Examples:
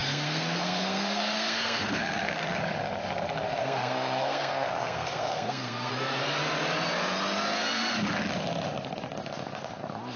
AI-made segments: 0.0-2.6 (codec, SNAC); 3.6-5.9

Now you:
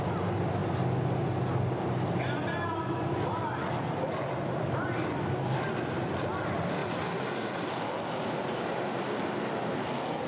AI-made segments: none